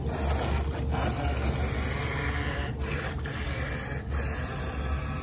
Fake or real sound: real